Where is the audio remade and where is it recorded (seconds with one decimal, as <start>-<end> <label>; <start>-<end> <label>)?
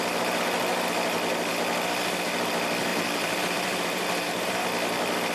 0.0-2.9 recorded; 2.9-4.7 remade; 4.7-5.3 recorded